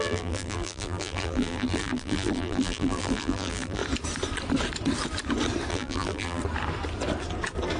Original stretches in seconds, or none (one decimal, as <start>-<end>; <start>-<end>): 3.8-5.7; 6.4-7.8